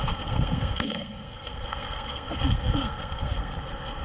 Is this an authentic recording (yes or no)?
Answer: no